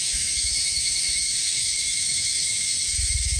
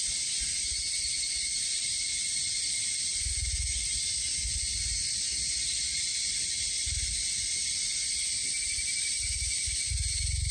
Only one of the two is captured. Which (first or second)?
second